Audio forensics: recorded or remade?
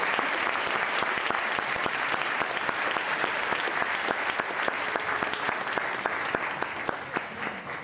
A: recorded